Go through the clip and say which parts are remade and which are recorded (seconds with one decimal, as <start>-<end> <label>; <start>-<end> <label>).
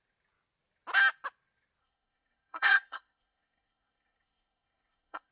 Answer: 0.0-1.8 recorded; 1.8-5.3 remade